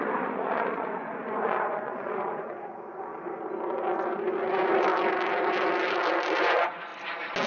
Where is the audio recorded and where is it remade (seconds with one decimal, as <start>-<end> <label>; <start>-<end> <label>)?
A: 0.0-3.1 remade; 3.1-4.5 recorded; 4.5-4.9 remade; 4.9-6.4 recorded; 6.4-6.9 remade; 6.9-7.5 recorded